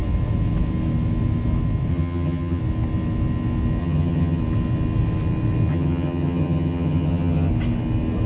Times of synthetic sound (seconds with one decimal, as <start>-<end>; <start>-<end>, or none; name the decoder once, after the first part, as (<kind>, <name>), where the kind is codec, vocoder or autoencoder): 1.9-2.6 (vocoder, HiFi-GAN); 3.8-4.4; 5.7-7.5